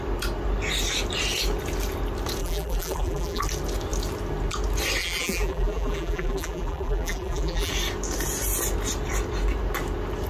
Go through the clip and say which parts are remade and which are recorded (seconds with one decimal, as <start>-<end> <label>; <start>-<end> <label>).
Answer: 0.0-2.4 recorded; 2.4-3.4 remade; 3.4-5.0 recorded; 5.0-7.7 remade; 7.7-10.3 recorded